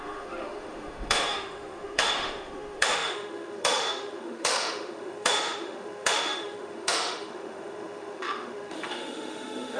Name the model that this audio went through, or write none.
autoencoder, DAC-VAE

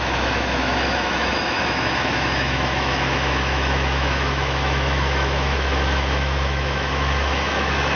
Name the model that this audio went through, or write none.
autoencoder, DAC-VAE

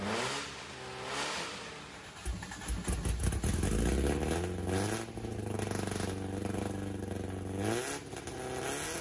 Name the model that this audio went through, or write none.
none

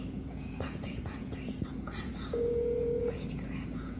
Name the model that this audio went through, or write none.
vocoder, Vocos